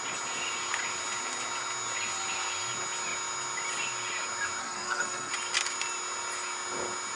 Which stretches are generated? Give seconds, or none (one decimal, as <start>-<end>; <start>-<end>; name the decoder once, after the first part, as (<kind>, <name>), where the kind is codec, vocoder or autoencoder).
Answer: 4.6-5.3 (codec, SNAC)